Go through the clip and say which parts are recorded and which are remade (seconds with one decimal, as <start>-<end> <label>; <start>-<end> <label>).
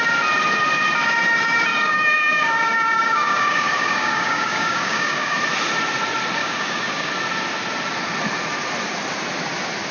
0.0-1.7 recorded; 1.7-5.4 remade; 5.4-6.4 recorded; 6.4-7.1 remade; 7.1-9.9 recorded